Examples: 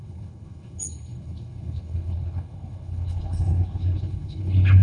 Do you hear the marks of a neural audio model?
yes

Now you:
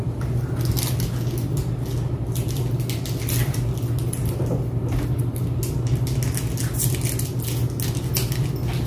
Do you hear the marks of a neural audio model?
no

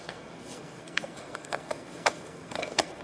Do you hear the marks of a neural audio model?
yes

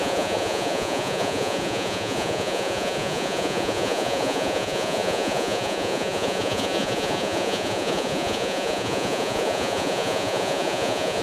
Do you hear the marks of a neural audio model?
yes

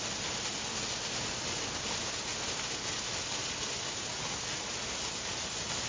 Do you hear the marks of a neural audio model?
no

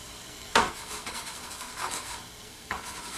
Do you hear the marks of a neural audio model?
yes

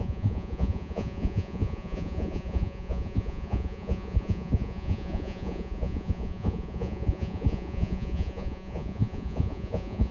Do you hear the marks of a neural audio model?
yes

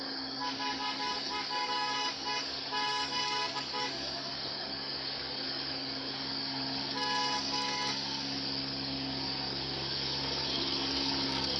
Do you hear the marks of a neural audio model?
yes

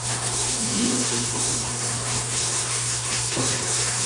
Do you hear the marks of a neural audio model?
yes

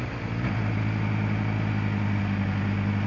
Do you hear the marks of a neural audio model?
no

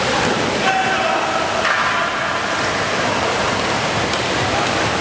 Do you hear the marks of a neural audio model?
no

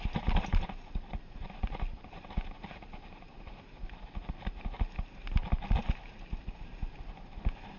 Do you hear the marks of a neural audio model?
no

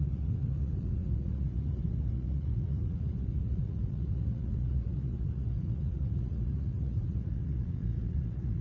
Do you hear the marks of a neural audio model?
yes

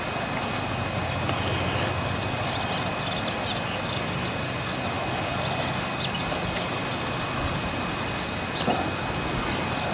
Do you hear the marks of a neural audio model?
no